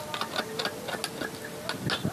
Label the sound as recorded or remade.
recorded